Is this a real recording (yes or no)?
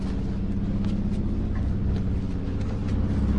yes